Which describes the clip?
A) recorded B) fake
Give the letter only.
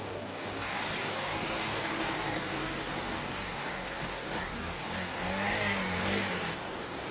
B